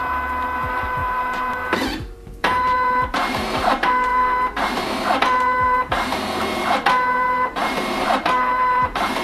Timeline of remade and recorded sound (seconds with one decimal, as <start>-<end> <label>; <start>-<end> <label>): 0.0-9.2 remade